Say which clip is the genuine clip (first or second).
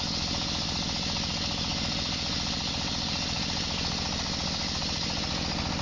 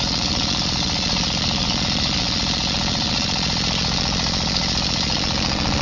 first